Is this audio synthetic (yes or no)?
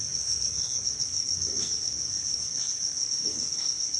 yes